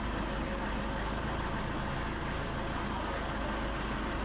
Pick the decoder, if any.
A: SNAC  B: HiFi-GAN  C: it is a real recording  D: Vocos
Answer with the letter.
C